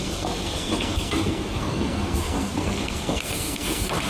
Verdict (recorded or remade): remade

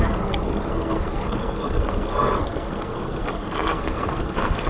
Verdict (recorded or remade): remade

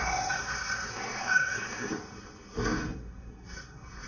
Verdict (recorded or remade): remade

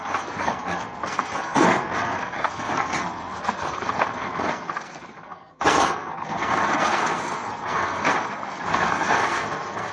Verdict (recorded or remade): remade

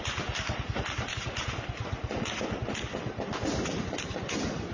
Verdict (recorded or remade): recorded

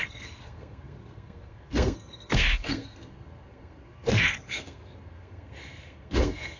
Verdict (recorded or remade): remade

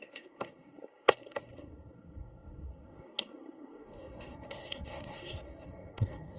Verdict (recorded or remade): remade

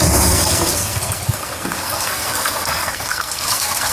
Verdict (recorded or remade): remade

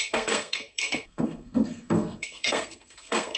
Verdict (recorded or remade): remade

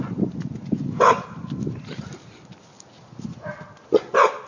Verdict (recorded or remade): recorded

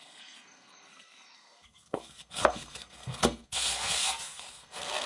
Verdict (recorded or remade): remade